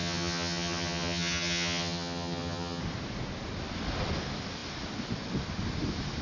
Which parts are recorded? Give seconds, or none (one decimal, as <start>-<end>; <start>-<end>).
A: 2.8-6.2